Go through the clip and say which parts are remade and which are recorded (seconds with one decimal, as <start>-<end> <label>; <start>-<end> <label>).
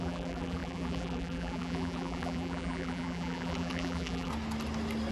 0.0-4.3 remade; 4.3-5.1 recorded